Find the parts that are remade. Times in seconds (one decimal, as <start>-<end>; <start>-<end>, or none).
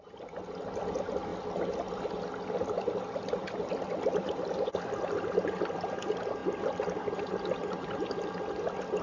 none